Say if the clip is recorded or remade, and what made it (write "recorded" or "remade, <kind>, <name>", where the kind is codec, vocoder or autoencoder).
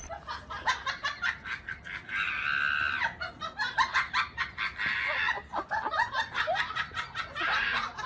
recorded